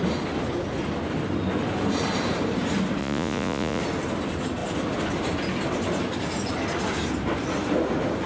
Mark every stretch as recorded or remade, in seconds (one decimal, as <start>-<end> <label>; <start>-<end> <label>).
0.0-3.0 recorded; 3.0-3.8 remade; 3.8-8.3 recorded